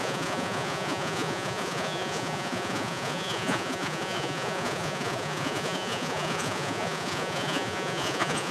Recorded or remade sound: remade